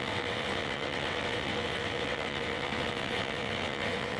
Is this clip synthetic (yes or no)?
yes